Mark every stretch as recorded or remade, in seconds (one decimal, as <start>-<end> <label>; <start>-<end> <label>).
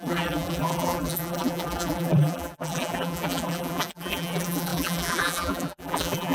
0.0-6.3 remade